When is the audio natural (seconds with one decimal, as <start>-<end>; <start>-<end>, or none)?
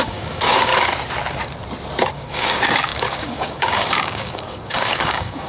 0.7-2.1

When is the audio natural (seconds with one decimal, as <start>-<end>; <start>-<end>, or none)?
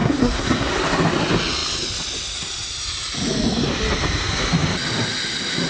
0.7-5.7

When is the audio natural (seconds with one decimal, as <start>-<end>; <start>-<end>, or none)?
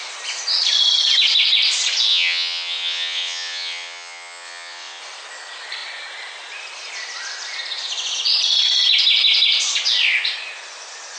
0.0-2.1; 5.0-11.2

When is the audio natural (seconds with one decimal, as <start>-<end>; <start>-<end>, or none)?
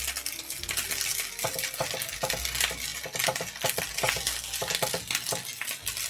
0.0-6.1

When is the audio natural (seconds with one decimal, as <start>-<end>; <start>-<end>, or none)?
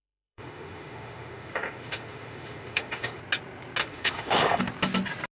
3.2-3.8; 4.6-5.3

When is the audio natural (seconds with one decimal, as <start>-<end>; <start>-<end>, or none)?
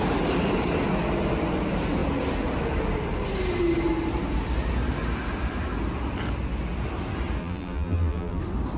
0.0-7.4; 8.4-8.8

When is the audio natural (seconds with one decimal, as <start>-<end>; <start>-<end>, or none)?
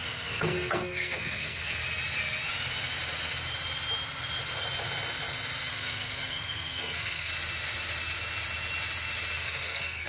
1.8-5.7; 7.3-9.4